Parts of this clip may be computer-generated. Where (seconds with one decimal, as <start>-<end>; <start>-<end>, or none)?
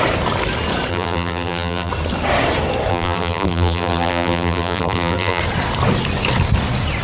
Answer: 0.9-1.9; 2.9-5.4